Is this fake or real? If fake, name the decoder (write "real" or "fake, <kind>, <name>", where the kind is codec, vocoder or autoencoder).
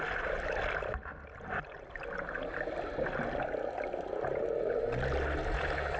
real